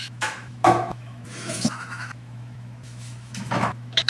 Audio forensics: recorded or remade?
remade